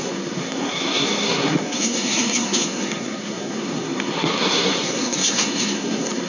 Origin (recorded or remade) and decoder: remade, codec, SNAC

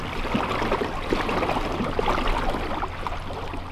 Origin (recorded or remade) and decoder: recorded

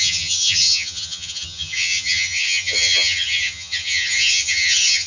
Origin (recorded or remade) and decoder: remade, vocoder, HiFi-GAN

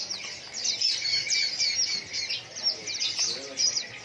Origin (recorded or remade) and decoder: recorded